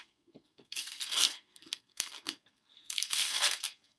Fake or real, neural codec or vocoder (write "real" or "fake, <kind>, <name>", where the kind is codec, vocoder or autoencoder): fake, codec, SNAC